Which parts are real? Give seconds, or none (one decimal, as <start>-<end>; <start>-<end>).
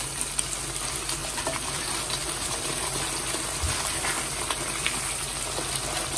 0.0-1.2; 4.9-6.2